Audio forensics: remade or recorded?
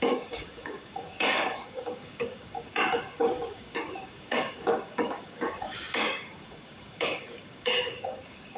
remade